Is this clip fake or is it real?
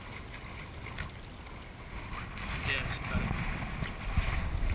real